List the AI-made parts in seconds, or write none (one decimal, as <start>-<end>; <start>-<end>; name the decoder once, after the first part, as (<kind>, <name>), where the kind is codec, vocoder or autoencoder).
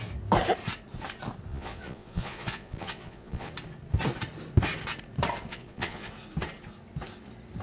1.5-3.5 (vocoder, Vocos); 5.5-6.1